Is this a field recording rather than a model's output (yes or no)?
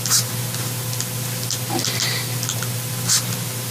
yes